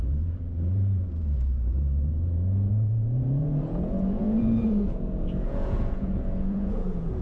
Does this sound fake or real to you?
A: fake